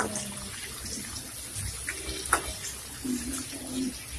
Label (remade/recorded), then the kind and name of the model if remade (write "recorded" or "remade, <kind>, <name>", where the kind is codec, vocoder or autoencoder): recorded